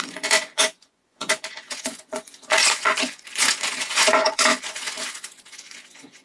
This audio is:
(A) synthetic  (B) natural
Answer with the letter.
A